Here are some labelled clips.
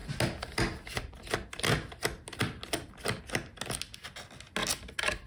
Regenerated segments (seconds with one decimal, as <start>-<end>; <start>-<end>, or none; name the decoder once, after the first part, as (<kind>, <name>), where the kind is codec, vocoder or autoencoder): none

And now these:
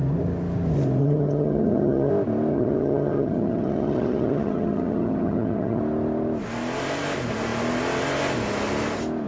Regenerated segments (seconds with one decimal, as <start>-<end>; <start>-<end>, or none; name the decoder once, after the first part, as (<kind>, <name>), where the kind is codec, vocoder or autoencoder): 1.0-2.1 (vocoder, HiFi-GAN); 2.5-5.8

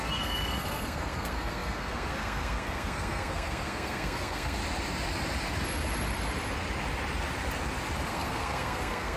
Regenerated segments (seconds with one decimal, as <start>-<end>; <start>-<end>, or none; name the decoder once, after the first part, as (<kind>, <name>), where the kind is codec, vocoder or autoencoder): 0.0-4.6 (codec, SNAC); 8.1-9.2

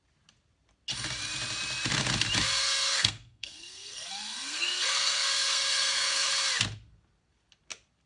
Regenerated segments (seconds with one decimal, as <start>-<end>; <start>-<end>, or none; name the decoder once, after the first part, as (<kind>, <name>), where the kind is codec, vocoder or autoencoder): 2.6-6.3 (codec, SNAC)

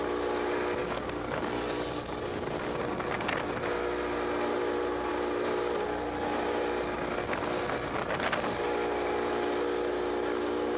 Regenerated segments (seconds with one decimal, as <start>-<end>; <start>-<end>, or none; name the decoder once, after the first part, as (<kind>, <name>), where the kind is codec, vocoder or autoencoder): 0.8-2.2 (codec, DAC)

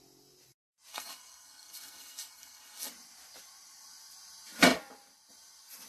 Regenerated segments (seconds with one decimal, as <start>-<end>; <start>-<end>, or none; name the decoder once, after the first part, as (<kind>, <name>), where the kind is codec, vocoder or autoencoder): 0.9-2.9 (codec, SNAC)

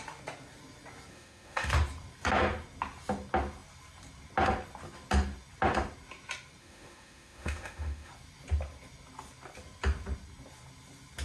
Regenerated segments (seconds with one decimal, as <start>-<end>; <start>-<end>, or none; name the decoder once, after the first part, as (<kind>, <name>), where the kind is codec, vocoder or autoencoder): 1.1-1.7 (autoencoder, DAC-VAE); 6.6-8.1

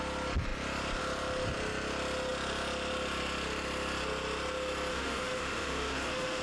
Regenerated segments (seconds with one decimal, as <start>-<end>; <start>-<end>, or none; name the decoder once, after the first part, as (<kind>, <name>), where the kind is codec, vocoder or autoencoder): 4.9-6.4 (autoencoder, DAC-VAE)